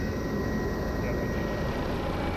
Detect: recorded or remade recorded